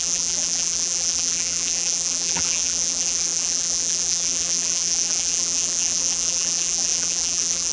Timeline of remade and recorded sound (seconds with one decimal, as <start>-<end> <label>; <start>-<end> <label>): 0.0-7.7 remade